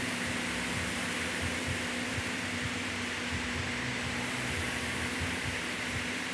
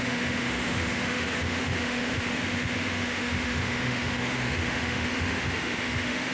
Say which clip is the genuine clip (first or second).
first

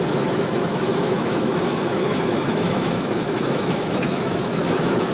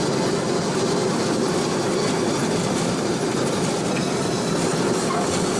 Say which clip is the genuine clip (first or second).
second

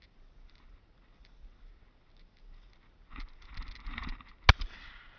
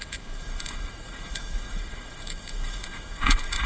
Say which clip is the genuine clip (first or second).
first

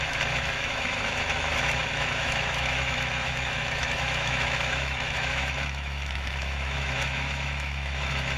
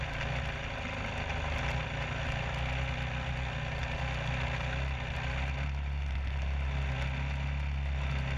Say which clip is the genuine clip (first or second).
second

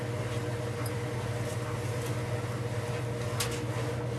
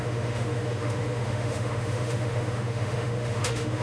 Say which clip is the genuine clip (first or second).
first